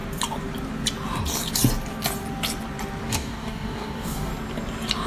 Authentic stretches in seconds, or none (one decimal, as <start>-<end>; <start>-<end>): 0.0-3.1; 4.3-5.1